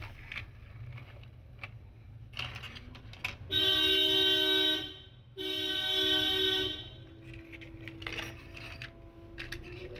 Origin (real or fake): real